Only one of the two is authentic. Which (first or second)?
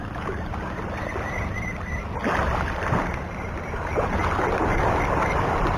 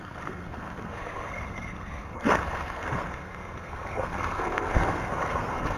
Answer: first